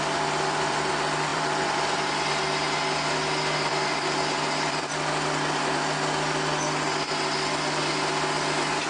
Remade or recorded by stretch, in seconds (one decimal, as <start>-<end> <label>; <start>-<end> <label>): 0.0-1.3 recorded; 1.3-2.1 remade; 2.1-8.9 recorded